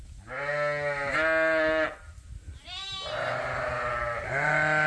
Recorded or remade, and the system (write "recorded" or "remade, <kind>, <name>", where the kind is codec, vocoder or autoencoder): recorded